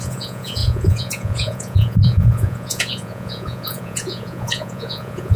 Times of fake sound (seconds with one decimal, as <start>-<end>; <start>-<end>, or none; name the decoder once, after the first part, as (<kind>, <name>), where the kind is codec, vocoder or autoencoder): 0.0-5.4 (vocoder, Vocos)

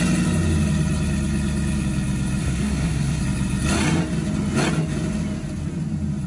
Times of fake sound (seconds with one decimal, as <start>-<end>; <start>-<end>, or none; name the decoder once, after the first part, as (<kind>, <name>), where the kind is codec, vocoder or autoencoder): 2.4-3.2 (codec, SNAC)

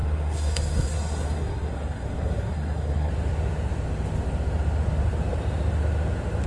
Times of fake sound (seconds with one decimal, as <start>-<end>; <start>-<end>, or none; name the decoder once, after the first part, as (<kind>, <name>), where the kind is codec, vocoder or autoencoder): 0.0-3.1 (codec, SNAC)

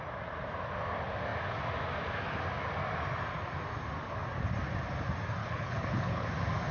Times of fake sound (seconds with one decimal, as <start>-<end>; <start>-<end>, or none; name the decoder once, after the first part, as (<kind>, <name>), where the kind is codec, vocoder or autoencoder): 5.4-6.3 (codec, HILCodec)